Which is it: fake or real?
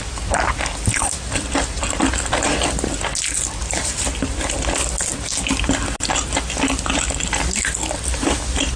real